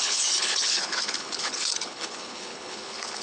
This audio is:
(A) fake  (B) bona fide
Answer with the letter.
A